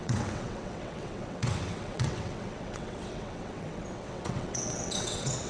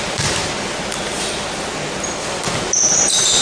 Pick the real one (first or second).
second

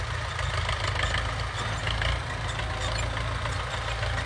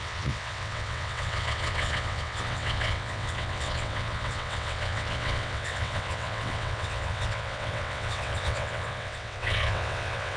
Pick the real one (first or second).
first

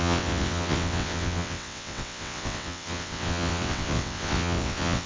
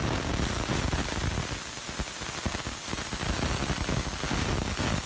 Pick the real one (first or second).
second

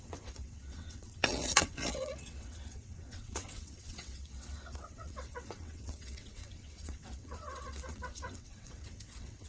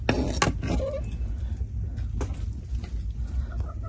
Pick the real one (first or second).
second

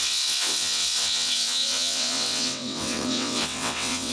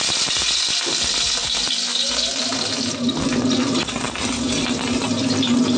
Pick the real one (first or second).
second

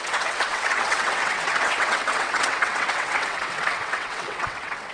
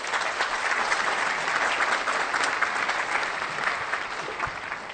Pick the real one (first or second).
second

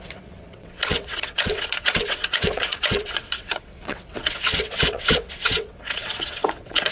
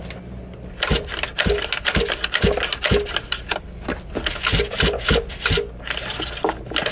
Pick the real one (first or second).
second